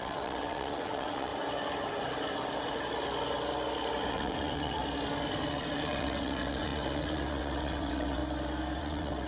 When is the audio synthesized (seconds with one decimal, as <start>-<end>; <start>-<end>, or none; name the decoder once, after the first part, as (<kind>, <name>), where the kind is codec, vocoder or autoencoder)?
0.0-1.3 (vocoder, WaveNeXt); 4.1-4.8; 5.5-8.2; 8.8-9.3